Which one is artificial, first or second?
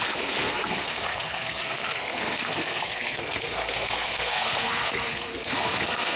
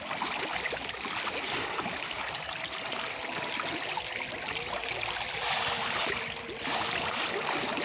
first